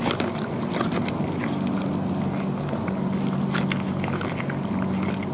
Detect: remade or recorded recorded